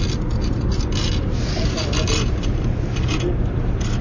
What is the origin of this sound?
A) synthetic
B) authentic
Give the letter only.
B